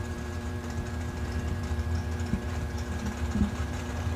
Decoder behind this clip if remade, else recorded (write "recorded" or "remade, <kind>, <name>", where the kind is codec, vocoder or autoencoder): remade, vocoder, BigVGAN v2